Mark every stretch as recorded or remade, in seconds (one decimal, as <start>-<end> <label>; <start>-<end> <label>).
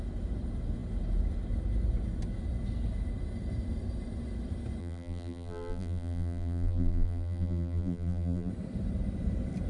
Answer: 0.0-4.8 recorded; 4.8-8.5 remade; 8.5-9.7 recorded